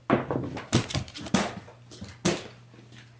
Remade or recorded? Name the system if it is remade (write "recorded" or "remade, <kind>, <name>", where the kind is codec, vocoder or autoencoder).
recorded